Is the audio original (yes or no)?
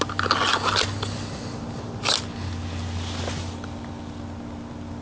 yes